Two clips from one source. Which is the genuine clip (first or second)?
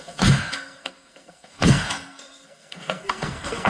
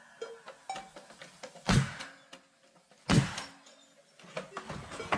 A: second